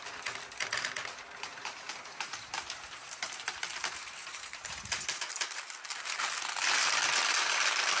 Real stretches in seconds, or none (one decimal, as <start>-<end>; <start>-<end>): 0.0-1.5; 5.3-8.0